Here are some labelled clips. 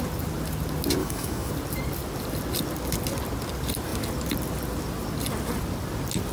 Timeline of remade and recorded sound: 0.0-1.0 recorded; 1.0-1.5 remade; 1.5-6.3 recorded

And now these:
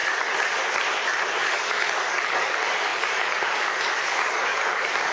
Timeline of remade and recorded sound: 0.0-1.2 recorded; 1.2-5.1 remade

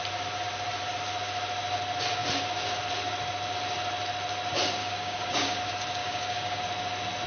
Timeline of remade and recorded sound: 0.0-4.8 recorded; 4.8-5.6 remade; 5.6-6.0 recorded; 6.0-6.6 remade; 6.6-7.3 recorded

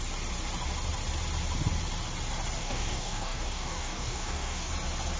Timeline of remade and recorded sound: 0.0-2.6 recorded; 2.6-4.7 remade; 4.7-5.2 recorded

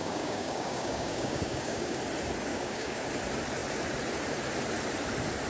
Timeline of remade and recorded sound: 0.0-2.0 remade; 2.0-2.5 recorded; 2.5-3.0 remade; 3.0-5.5 recorded